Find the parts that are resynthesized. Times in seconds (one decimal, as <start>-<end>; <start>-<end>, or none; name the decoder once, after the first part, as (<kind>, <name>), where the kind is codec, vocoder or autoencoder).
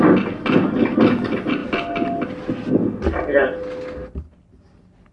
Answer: none